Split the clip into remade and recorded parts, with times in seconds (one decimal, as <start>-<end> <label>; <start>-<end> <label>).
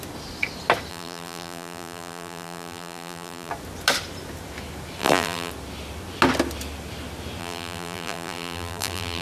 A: 0.0-0.9 recorded; 0.9-3.5 remade; 3.5-5.0 recorded; 5.0-5.5 remade; 5.5-7.4 recorded; 7.4-9.2 remade